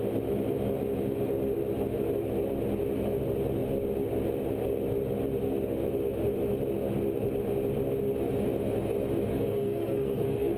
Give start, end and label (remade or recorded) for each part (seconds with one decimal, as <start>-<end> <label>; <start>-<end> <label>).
0.0-9.3 recorded; 9.3-10.6 remade